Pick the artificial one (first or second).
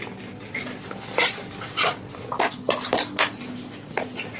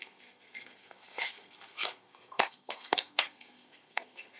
second